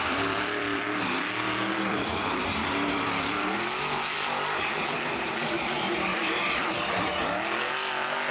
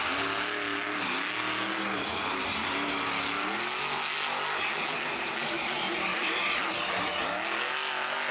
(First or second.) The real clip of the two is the second